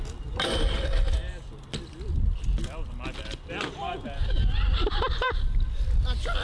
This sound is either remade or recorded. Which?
remade